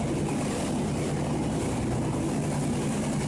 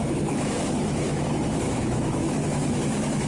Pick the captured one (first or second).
first